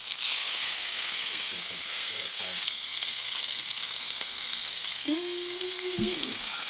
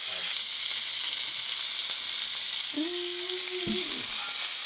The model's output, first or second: first